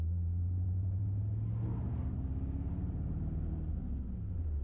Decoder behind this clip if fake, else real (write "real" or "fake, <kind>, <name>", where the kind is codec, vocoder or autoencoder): real